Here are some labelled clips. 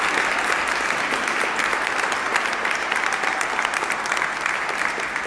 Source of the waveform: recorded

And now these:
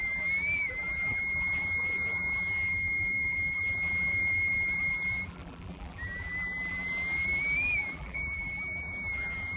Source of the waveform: remade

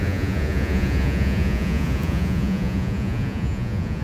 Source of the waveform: remade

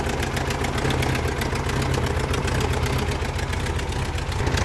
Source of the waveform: recorded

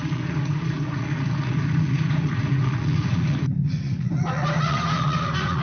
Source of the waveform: remade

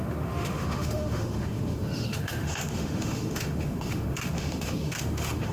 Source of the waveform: remade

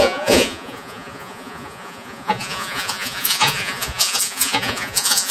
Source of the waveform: remade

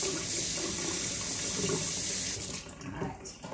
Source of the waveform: recorded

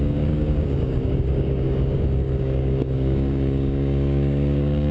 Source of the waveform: remade